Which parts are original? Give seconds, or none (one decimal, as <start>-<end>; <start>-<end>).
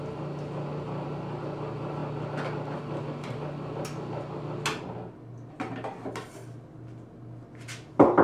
0.0-8.2